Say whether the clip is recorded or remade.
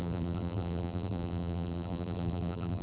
remade